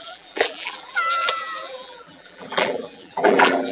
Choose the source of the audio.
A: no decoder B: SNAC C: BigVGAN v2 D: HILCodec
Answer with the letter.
C